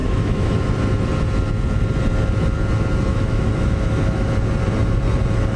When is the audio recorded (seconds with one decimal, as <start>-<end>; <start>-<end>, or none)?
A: 0.5-3.1; 4.3-5.6